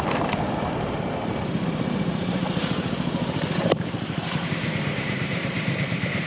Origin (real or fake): fake